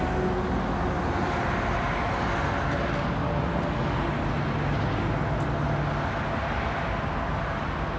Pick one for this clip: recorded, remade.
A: recorded